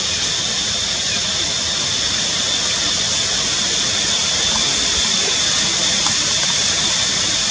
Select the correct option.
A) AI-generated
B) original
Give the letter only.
B